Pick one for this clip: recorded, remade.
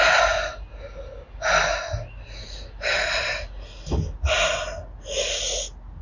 recorded